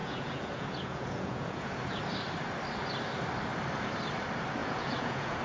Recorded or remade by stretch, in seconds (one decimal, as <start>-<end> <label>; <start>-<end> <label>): 0.0-2.0 remade; 2.0-4.6 recorded; 4.6-5.4 remade